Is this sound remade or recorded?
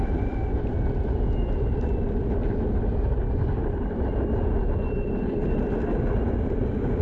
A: recorded